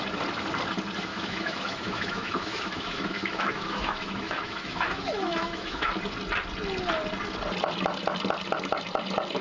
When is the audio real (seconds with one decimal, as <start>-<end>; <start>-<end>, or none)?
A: 0.0-1.1; 5.9-9.4